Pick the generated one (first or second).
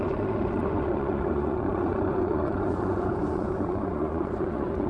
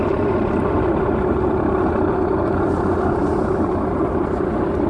first